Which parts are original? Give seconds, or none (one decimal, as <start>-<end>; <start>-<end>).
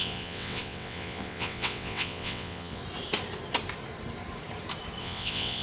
2.8-5.0